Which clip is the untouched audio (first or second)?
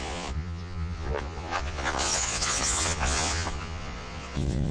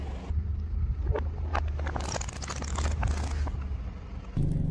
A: second